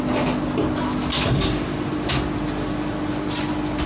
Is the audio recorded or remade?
recorded